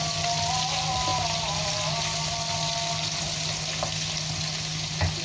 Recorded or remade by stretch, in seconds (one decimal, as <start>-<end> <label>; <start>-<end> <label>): 0.0-5.2 recorded

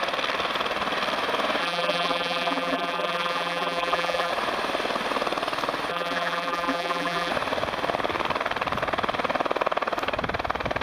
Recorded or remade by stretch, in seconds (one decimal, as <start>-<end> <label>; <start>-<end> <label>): 0.0-1.6 recorded; 1.6-4.3 remade; 4.3-5.9 recorded; 5.9-7.3 remade; 7.3-10.8 recorded

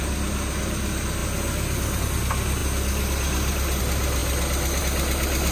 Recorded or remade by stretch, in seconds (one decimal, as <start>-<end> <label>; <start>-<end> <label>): 0.0-5.5 recorded

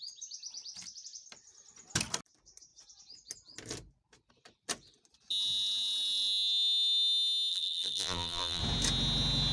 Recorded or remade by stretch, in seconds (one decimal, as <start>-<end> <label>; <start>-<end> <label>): 0.0-7.5 recorded; 7.5-8.6 remade; 8.6-9.5 recorded

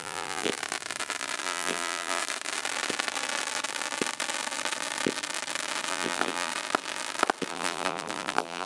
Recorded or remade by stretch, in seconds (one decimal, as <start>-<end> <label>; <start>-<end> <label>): 0.0-0.5 remade; 0.5-1.4 recorded; 1.4-2.2 remade; 2.2-5.9 recorded; 5.9-6.5 remade; 6.5-7.5 recorded; 7.5-8.7 remade

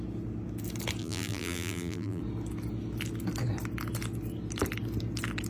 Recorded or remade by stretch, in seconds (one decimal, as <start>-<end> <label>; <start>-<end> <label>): 0.0-1.0 recorded; 1.0-2.2 remade; 2.2-5.5 recorded

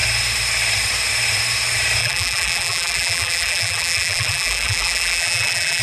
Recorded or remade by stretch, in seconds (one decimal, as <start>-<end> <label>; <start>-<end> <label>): 0.0-2.0 recorded; 2.0-5.8 remade